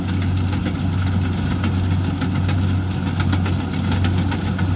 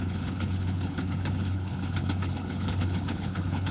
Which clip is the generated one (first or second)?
second